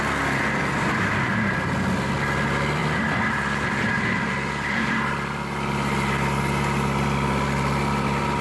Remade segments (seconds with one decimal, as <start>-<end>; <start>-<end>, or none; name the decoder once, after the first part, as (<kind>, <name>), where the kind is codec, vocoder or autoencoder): none